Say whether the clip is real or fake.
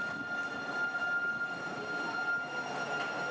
real